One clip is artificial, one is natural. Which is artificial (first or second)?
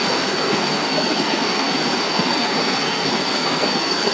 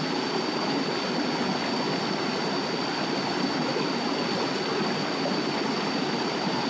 first